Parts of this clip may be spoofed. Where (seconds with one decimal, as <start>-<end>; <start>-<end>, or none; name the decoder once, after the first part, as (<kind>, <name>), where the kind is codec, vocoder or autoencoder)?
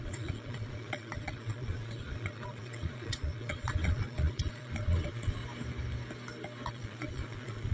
0.0-5.4 (vocoder, Vocos); 6.7-7.7